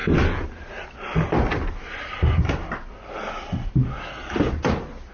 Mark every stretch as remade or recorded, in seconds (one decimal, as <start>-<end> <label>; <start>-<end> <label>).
0.0-5.1 recorded